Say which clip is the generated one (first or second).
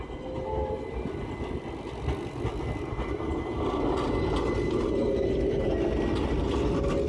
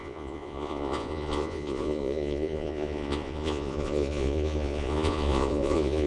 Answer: second